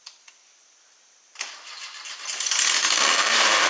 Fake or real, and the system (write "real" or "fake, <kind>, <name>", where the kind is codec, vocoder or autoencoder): real